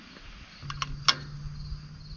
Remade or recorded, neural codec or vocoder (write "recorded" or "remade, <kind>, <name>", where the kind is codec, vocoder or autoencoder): recorded